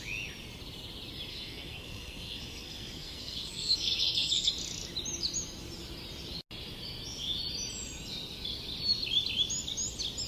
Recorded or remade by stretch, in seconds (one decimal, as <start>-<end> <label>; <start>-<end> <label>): 0.0-1.3 recorded; 1.3-4.5 remade; 4.5-10.3 recorded